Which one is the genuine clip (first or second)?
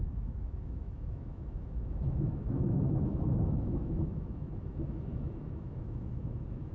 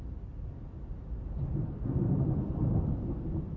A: second